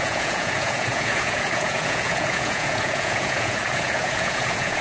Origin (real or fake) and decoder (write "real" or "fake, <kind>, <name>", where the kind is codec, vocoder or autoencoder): fake, vocoder, Vocos